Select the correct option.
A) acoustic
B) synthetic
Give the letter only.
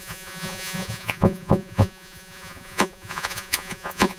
B